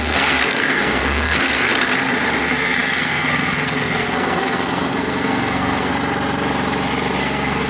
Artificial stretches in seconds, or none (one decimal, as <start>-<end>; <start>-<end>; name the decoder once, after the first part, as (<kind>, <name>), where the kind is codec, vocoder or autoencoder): 0.0-1.7 (codec, SNAC); 2.4-5.9; 7.2-7.7